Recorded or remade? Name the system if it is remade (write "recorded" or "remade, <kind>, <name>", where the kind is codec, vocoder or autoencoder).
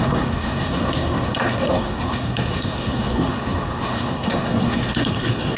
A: remade, codec, SNAC